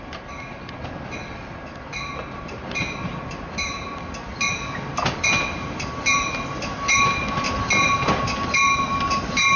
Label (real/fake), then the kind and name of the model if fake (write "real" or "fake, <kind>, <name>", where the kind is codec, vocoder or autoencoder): real